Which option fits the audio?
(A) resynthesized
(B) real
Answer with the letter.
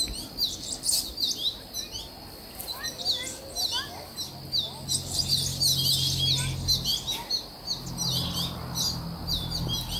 B